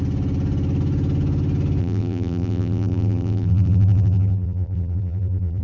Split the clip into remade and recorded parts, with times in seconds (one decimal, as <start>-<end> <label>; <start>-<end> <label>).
0.0-1.8 recorded; 1.8-5.6 remade